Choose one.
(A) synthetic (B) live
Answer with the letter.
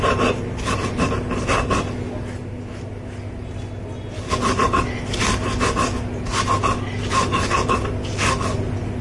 B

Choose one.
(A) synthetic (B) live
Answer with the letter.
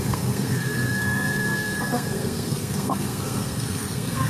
A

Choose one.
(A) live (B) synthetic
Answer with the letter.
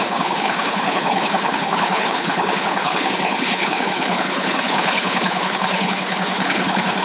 B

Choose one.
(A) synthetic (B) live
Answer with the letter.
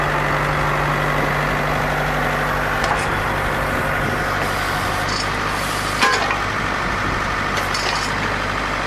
B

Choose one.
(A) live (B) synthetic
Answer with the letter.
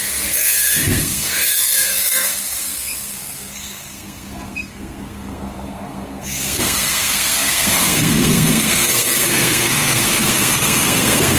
B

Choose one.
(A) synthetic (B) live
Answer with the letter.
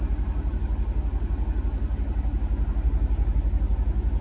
B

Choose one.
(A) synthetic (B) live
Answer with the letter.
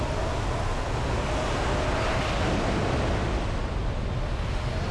B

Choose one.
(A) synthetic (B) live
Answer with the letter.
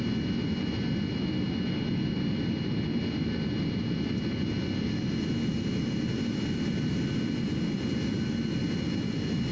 B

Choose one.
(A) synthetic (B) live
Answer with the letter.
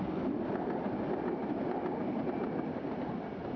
B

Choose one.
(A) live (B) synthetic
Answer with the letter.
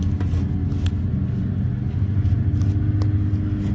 A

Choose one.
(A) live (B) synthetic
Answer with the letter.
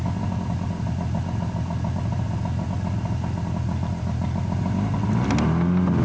A